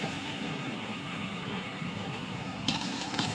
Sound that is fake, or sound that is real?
fake